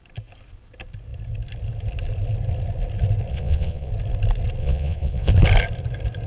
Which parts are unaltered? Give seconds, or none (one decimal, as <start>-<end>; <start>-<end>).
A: 0.0-3.3; 3.9-4.6; 5.3-6.3